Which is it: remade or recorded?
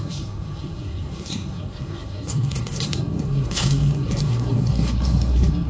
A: remade